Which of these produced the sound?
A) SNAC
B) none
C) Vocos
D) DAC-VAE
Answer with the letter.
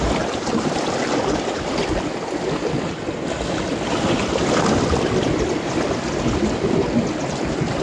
B